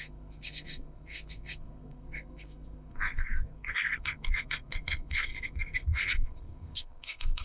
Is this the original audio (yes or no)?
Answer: no